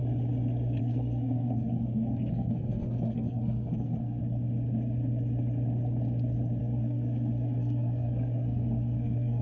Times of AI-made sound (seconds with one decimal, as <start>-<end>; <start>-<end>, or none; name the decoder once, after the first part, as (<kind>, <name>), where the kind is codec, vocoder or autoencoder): 0.8-4.2 (codec, SNAC); 6.6-9.4